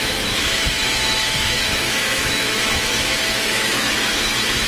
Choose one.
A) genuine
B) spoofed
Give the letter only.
B